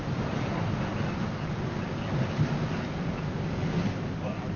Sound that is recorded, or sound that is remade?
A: recorded